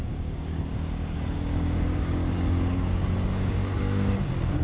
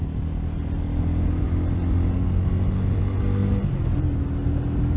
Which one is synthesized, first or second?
first